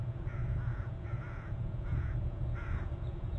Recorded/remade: remade